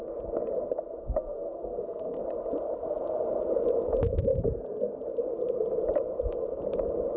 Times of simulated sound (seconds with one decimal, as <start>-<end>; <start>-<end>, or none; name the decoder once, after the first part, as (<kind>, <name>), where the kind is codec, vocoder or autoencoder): 1.0-2.2 (codec, SNAC)